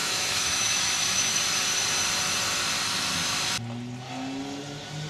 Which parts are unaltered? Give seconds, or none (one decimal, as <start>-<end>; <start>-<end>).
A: 1.4-5.1